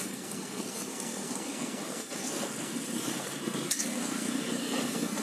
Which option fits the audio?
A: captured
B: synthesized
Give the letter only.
B